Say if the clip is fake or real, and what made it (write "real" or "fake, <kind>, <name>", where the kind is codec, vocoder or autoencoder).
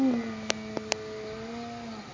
real